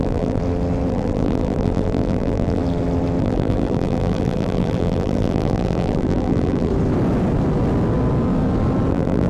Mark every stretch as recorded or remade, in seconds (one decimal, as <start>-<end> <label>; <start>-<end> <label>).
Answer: 0.0-0.4 remade; 0.4-0.9 recorded; 0.9-2.6 remade; 2.6-3.2 recorded; 3.2-6.7 remade; 6.7-8.9 recorded; 8.9-9.3 remade